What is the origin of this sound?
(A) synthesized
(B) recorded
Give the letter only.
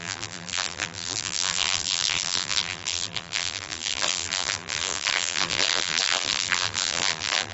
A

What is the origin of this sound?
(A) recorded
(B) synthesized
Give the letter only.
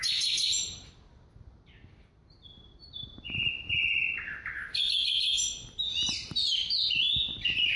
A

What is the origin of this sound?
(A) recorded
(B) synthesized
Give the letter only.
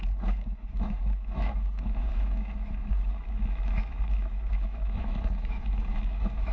B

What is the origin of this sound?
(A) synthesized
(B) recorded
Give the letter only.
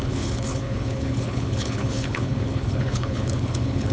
A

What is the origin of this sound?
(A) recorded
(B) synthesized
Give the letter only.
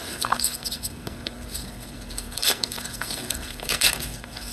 B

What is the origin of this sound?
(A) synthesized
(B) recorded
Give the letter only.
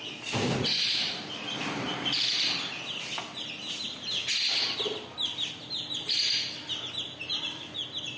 B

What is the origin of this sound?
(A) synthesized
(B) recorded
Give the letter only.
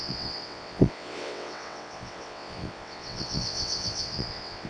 A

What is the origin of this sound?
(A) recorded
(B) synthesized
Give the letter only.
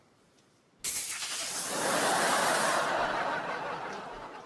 A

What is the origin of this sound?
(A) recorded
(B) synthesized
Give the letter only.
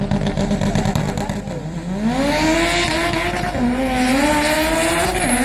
A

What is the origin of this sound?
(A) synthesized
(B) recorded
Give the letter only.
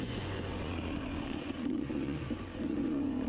A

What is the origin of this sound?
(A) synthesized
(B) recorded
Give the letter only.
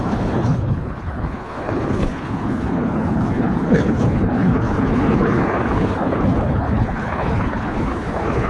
A